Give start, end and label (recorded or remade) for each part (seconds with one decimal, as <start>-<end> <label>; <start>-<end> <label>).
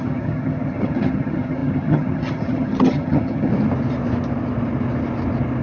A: 0.0-3.5 remade; 3.5-5.6 recorded